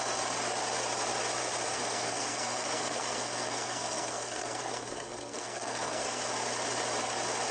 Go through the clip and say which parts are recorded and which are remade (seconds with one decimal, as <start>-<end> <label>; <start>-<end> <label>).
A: 0.0-1.7 recorded; 1.7-6.2 remade; 6.2-7.5 recorded